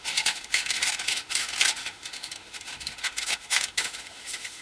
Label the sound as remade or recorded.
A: remade